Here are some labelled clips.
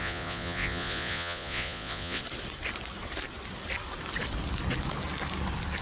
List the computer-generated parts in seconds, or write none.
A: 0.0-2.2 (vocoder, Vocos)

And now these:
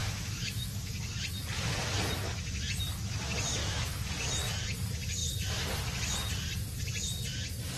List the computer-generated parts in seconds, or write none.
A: 0.0-0.9 (autoencoder, DAC-VAE); 3.6-4.1

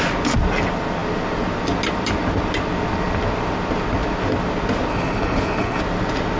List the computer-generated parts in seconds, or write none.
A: 4.9-5.8 (codec, HILCodec)

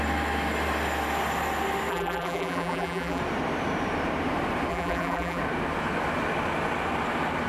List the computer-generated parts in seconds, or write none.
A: 1.9-3.2 (vocoder, BigVGAN v2); 4.7-5.4

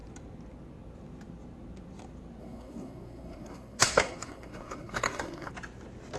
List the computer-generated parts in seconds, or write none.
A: 2.4-5.5 (codec, SNAC)